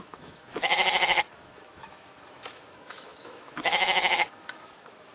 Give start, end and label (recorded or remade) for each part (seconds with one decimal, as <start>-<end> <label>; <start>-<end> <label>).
0.0-0.5 remade; 0.5-1.4 recorded; 1.4-5.1 remade